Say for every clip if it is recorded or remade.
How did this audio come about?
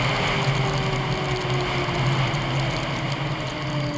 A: recorded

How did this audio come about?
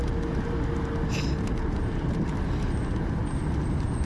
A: recorded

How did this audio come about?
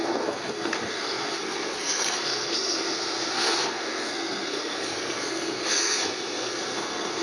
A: remade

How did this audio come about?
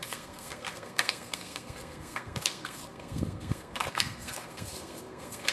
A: remade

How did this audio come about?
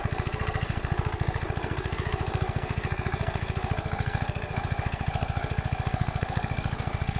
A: remade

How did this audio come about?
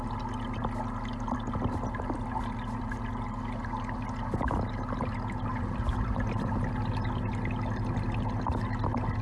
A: recorded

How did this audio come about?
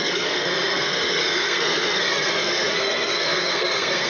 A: remade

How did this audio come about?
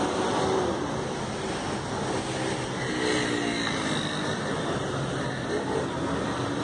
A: recorded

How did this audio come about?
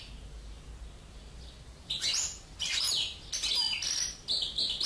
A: recorded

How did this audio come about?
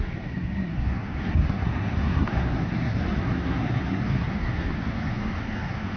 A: remade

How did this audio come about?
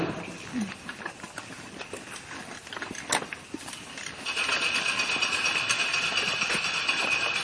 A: recorded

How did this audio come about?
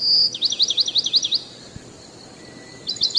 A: recorded